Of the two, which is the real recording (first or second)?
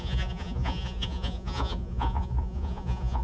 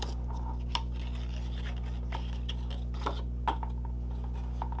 second